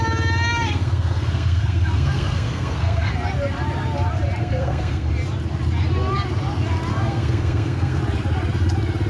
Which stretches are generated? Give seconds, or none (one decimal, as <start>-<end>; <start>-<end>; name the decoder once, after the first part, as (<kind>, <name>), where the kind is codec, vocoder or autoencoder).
0.6-3.1 (codec, SNAC); 4.4-5.1; 6.9-8.0